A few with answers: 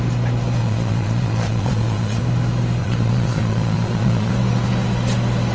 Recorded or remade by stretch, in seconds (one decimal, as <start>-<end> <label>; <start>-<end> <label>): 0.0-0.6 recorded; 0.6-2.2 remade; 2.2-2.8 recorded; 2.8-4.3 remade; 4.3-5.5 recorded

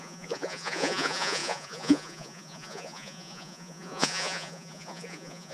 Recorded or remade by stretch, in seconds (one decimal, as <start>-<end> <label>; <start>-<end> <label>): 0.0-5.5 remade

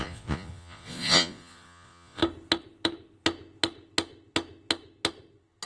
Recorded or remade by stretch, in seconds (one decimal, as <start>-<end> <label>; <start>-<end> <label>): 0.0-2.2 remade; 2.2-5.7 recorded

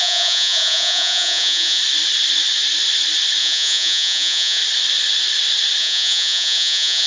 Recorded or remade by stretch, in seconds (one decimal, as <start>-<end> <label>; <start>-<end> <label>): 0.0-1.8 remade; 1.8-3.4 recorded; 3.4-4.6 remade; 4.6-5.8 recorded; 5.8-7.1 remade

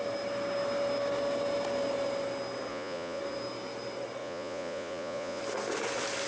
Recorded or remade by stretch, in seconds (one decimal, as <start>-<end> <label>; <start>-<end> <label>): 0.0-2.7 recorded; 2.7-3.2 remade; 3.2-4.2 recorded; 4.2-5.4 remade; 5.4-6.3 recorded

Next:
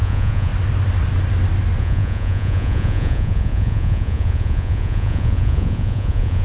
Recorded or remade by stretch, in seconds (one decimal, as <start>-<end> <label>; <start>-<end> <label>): 0.0-0.5 remade; 0.5-1.8 recorded; 1.8-6.4 remade

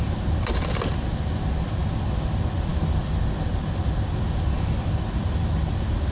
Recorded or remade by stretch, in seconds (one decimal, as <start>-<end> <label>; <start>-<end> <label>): 0.0-6.1 recorded

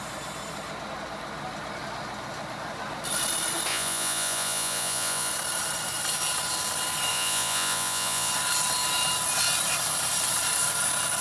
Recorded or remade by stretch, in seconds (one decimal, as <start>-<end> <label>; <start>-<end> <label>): 0.0-3.7 recorded; 3.7-5.3 remade; 5.3-7.1 recorded; 7.1-8.3 remade; 8.3-11.2 recorded